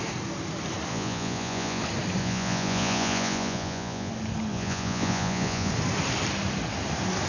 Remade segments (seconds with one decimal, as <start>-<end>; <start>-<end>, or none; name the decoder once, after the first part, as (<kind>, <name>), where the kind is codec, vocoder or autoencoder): 0.9-1.8 (vocoder, Vocos); 2.2-4.1; 4.5-5.7